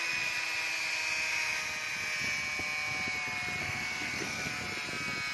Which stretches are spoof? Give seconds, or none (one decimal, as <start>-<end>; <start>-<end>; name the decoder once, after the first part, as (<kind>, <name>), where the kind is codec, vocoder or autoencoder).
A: 3.6-4.5 (codec, SNAC)